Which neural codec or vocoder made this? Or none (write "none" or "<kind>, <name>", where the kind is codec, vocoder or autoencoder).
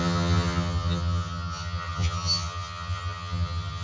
vocoder, HiFi-GAN